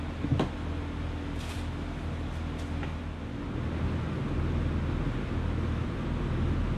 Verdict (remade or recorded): recorded